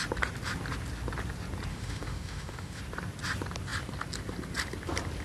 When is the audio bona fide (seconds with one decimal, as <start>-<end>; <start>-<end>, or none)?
0.0-1.7; 2.8-5.2